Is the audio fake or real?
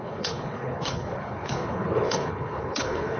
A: fake